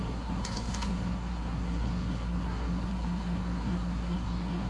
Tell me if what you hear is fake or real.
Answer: fake